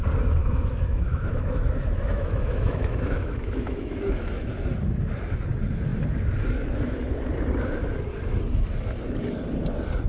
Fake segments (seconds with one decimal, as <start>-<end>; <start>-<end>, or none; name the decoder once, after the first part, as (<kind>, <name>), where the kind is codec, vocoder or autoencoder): 0.4-4.5 (autoencoder, DAC-VAE)